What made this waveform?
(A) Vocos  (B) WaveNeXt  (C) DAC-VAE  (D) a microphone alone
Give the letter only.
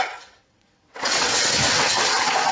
B